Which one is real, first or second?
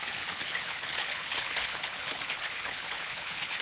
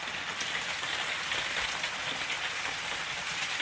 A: second